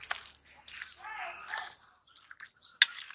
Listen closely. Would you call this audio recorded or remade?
recorded